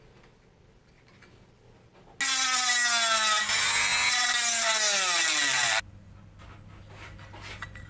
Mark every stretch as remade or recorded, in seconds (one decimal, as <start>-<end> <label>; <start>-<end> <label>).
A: 0.0-7.9 recorded